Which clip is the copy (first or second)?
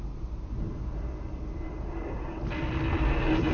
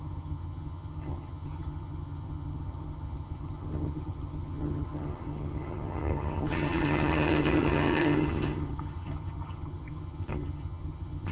second